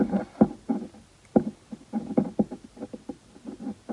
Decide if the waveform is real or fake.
real